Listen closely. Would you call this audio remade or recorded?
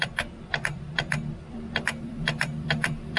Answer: remade